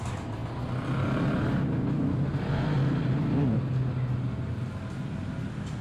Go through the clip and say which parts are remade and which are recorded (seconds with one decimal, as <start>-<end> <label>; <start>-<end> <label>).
0.0-5.8 recorded